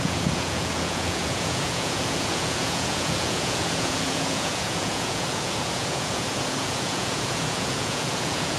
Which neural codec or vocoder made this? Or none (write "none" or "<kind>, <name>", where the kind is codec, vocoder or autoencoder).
vocoder, Vocos